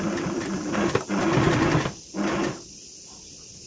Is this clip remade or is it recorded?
recorded